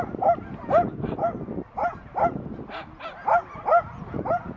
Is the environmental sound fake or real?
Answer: real